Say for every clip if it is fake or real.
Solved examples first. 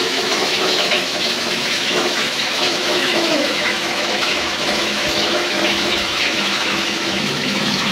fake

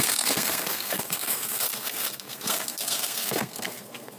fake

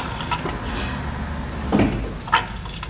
real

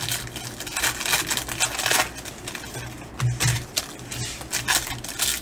real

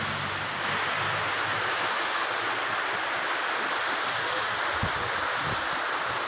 real